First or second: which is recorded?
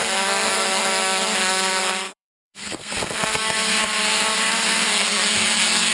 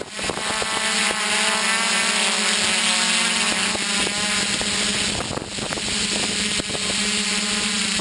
second